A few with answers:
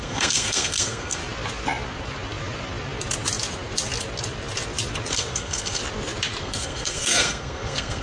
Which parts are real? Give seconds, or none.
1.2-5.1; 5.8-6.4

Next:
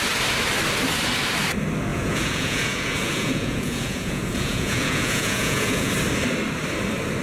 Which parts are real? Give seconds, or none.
0.0-1.9; 5.9-7.2